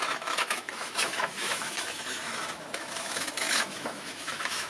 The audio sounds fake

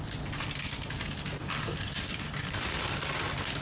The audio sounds real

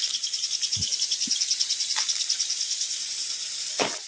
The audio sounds real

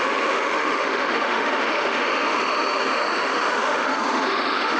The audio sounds fake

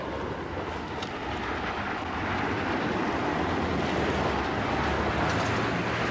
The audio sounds real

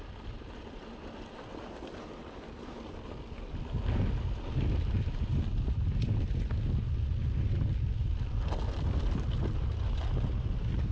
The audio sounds real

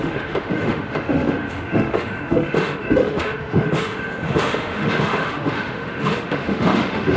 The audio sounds fake